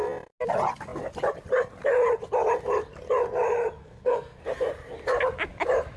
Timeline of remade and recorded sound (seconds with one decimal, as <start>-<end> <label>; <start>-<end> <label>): 0.0-3.8 recorded; 3.8-4.4 remade; 4.4-6.0 recorded